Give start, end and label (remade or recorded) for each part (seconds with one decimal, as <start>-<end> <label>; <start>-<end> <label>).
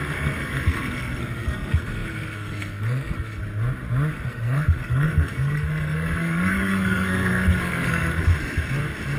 0.0-3.4 remade; 3.4-4.1 recorded; 4.1-8.3 remade; 8.3-9.2 recorded